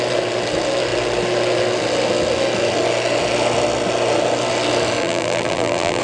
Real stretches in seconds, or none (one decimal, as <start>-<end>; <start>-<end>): 0.0-5.0